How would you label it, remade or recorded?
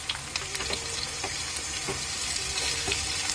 recorded